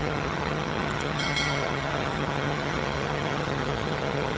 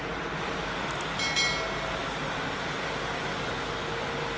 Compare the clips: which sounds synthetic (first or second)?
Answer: first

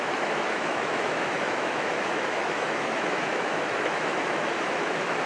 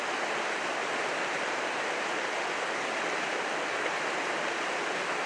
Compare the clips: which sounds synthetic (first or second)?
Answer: first